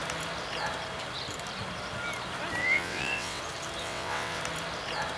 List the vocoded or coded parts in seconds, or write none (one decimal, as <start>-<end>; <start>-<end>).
2.6-3.4; 3.8-4.4